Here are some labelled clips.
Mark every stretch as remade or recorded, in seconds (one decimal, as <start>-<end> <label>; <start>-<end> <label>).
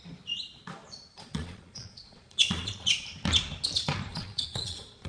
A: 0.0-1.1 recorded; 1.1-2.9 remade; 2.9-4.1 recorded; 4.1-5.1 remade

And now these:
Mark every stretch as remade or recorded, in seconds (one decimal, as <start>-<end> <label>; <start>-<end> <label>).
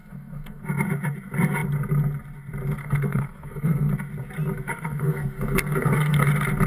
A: 0.0-0.6 remade; 0.6-2.8 recorded; 2.8-3.9 remade; 3.9-4.7 recorded; 4.7-6.3 remade; 6.3-6.7 recorded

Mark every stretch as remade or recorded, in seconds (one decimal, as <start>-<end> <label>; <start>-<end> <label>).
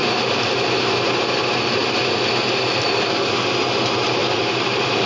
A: 0.0-4.2 recorded; 4.2-5.1 remade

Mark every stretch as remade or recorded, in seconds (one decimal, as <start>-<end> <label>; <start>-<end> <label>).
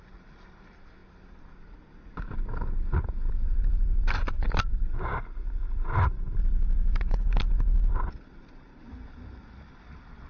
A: 0.0-10.3 recorded